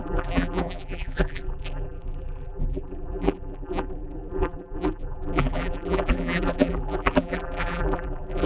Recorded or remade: remade